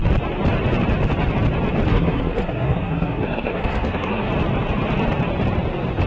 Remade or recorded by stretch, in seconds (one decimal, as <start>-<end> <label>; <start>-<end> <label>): 0.0-1.9 recorded; 1.9-4.3 remade; 4.3-6.1 recorded